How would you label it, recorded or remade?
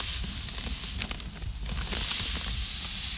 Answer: recorded